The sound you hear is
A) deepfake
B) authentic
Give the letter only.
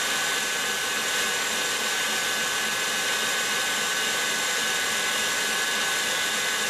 A